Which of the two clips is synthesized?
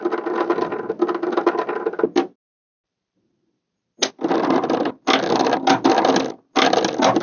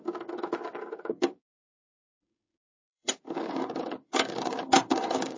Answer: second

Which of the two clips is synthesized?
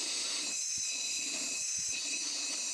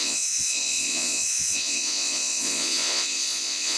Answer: second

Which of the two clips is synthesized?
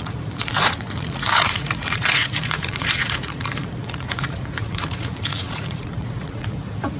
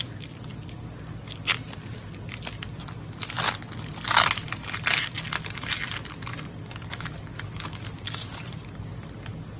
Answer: first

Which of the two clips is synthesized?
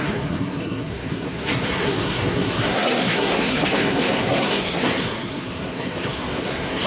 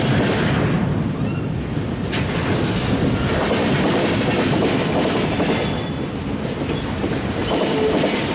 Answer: first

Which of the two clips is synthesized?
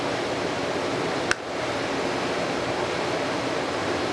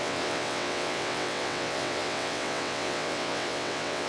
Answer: second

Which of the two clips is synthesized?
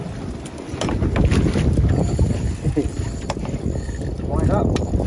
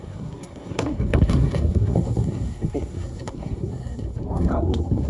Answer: second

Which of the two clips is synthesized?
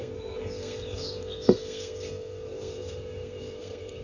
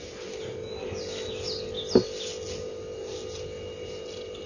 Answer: first